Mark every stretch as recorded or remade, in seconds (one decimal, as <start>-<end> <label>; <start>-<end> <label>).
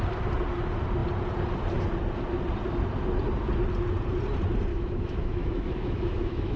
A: 0.0-4.7 recorded; 4.7-6.6 remade